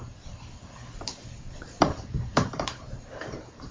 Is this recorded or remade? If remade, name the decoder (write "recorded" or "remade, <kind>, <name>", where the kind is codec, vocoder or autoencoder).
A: remade, vocoder, BigVGAN v2